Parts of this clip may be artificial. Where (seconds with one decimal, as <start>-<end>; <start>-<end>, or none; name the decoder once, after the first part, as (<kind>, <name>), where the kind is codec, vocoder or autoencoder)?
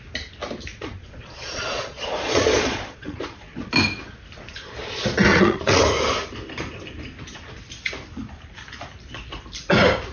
0.7-3.7 (vocoder, Vocos); 5.3-5.8